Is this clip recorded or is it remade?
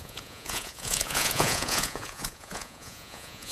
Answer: remade